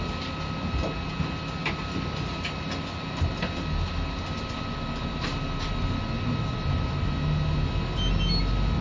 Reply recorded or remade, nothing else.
recorded